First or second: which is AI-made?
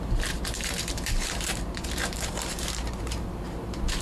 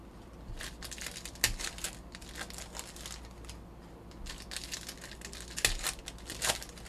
first